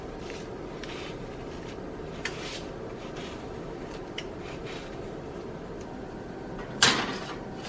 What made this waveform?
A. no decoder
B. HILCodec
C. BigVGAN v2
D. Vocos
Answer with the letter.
C